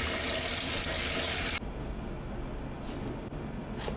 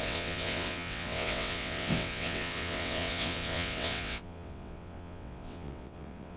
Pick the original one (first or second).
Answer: first